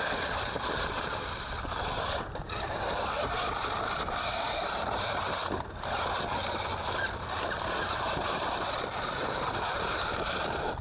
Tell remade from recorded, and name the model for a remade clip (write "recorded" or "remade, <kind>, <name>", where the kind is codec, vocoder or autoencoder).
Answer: recorded